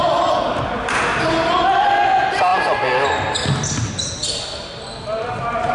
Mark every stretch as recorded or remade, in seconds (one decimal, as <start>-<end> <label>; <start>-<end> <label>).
0.0-5.7 recorded